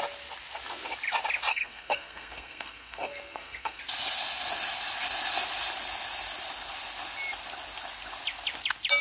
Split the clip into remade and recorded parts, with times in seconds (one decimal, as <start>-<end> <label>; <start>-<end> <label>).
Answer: 0.0-1.5 recorded; 1.5-3.8 remade; 3.8-9.0 recorded